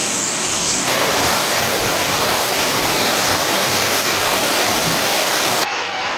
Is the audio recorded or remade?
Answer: remade